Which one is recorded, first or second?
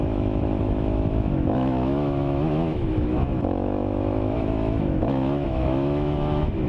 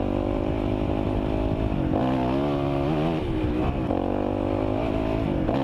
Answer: second